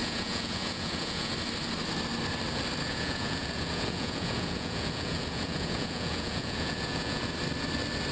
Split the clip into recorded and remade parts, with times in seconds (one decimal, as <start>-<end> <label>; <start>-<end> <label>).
0.0-1.3 remade; 1.3-2.9 recorded; 2.9-7.2 remade; 7.2-8.1 recorded